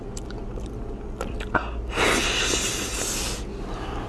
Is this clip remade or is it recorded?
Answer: recorded